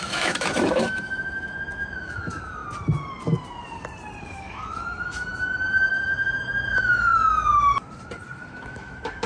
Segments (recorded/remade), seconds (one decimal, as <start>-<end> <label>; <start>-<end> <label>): 0.0-2.6 remade; 2.6-4.2 recorded; 4.2-5.3 remade; 5.3-5.9 recorded; 5.9-7.1 remade; 7.1-8.5 recorded; 8.5-9.3 remade